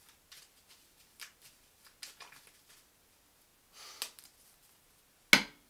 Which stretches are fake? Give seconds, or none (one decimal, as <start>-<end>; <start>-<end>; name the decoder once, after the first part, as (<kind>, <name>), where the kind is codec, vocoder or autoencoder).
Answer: none